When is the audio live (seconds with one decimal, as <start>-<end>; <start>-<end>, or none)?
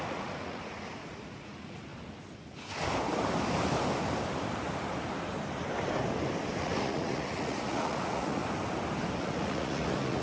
1.9-6.6; 8.4-9.2